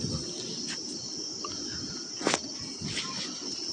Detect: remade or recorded recorded